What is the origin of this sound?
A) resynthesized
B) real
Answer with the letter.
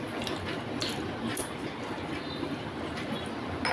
B